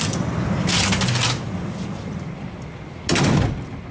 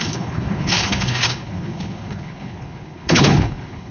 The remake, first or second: second